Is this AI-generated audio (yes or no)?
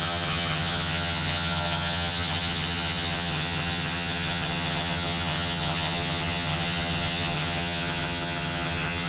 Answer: yes